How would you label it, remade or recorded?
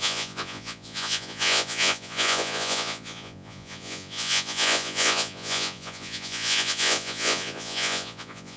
remade